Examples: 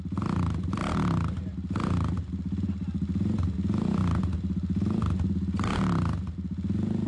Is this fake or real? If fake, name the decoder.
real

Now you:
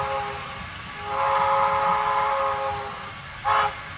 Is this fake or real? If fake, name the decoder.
real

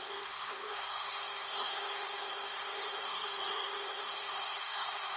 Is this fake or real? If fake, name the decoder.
fake, codec, SNAC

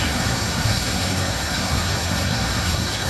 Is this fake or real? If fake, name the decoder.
fake, codec, SNAC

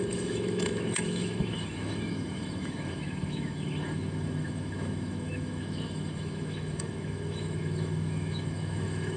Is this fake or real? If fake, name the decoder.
fake, autoencoder, DAC-VAE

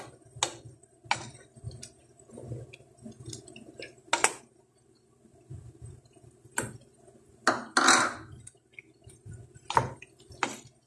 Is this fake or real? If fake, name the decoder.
real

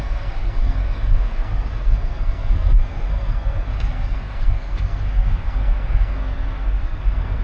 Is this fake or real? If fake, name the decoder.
fake, codec, SNAC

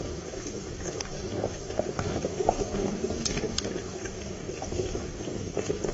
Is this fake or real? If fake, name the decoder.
fake, codec, DAC